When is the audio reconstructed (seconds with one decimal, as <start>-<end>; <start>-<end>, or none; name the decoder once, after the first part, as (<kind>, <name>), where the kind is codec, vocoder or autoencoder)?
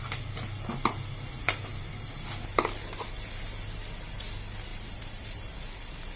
4.7-5.5 (vocoder, BigVGAN v2)